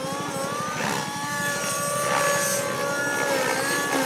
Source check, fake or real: real